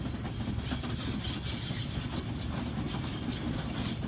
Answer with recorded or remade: recorded